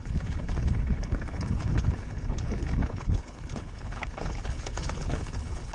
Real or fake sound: fake